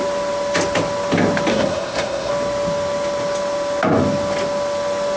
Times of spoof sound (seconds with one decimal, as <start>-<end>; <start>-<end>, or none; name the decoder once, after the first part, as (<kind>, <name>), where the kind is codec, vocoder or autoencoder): 1.5-2.3 (codec, SNAC)